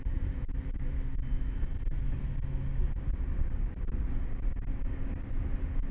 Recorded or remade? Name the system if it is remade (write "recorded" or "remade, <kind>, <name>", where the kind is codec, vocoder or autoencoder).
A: recorded